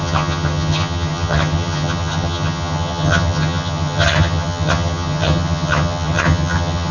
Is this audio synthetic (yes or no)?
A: yes